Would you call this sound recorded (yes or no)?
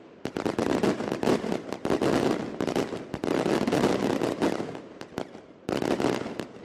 yes